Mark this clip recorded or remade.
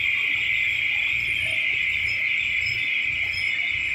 recorded